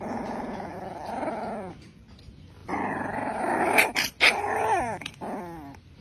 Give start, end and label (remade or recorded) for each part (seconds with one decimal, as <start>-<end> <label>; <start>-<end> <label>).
0.0-0.7 recorded; 0.7-1.7 remade; 1.7-2.6 recorded; 2.6-5.1 remade; 5.1-6.0 recorded